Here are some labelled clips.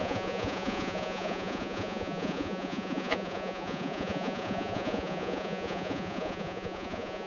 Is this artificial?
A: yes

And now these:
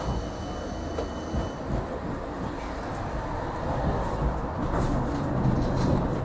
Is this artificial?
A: no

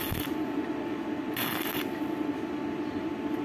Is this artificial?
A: no